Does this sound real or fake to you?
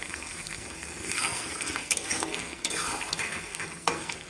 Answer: fake